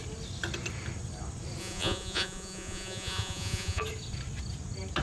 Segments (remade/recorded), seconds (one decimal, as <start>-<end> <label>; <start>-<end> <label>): 0.0-1.6 recorded; 1.6-3.8 remade; 3.8-5.0 recorded